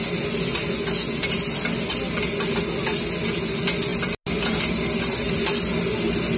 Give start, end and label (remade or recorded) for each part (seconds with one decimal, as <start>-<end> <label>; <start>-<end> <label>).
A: 0.0-6.4 recorded